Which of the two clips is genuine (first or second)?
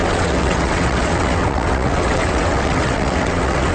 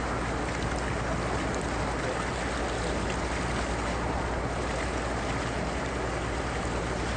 second